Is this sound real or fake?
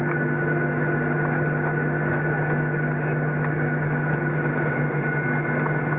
real